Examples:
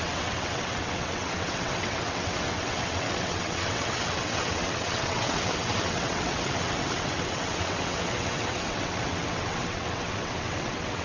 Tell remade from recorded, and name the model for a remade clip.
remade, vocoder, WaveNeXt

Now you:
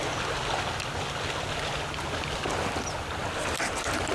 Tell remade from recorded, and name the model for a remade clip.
recorded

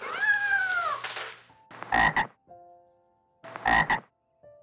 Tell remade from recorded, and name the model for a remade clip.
recorded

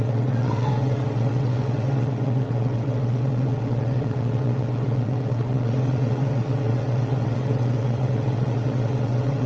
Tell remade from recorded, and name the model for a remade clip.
remade, vocoder, WaveNeXt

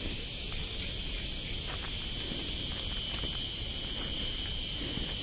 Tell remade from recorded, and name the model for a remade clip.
recorded